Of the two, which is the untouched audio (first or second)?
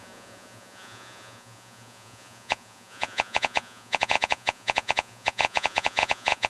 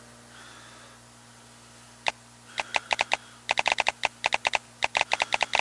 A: second